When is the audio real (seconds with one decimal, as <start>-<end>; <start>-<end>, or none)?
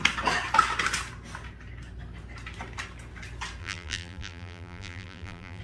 0.0-3.6